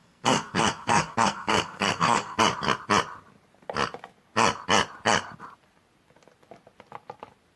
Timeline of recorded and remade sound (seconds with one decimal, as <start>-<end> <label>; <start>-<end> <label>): 0.0-2.4 remade; 2.4-7.6 recorded